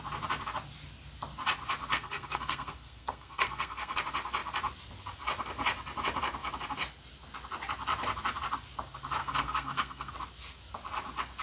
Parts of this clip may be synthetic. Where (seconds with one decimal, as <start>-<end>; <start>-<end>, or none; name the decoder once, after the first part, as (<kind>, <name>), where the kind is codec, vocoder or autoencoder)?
1.9-4.0 (codec, SNAC); 9.2-10.1